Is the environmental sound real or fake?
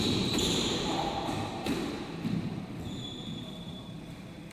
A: fake